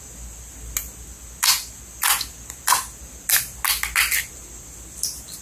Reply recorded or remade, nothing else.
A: recorded